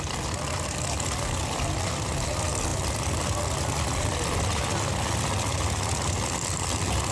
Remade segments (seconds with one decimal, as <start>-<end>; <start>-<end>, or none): none